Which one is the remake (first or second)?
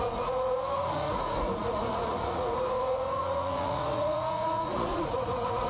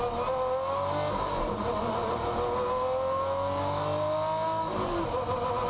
first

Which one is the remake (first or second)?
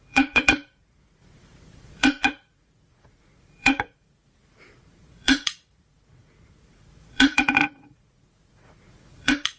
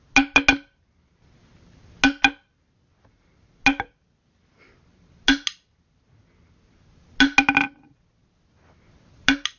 first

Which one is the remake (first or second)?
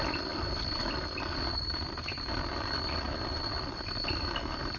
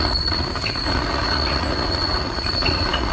second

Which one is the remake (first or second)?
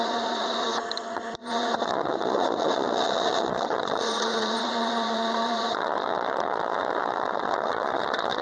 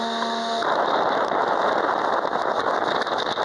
first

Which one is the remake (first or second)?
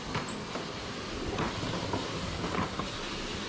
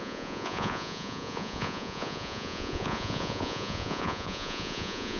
second